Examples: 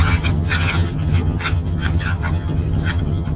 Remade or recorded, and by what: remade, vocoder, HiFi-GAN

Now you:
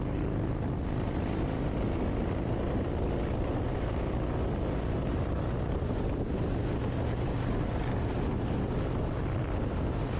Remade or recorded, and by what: recorded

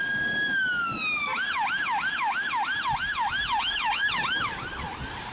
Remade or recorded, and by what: recorded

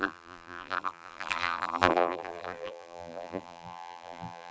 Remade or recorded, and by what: remade, vocoder, BigVGAN v2